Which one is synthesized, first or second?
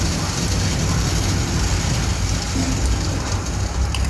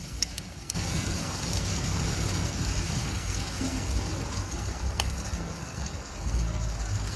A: second